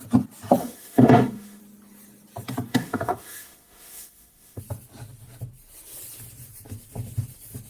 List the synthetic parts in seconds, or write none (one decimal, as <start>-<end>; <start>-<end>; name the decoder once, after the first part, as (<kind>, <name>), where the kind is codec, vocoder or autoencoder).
0.6-1.6 (autoencoder, DAC-VAE); 2.7-4.6